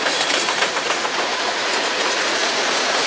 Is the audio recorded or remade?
remade